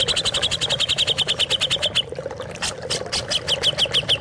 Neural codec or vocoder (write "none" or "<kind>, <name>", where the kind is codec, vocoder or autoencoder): none